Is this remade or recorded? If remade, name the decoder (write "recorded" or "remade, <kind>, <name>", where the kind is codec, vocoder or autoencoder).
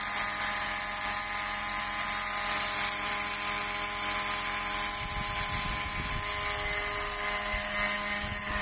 recorded